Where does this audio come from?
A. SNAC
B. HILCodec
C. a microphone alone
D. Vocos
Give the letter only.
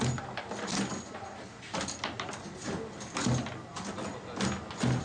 C